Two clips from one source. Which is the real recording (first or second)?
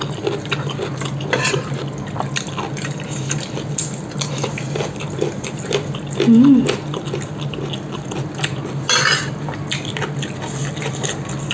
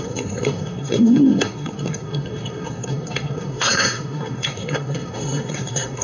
first